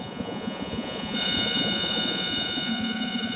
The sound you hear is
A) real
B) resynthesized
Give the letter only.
B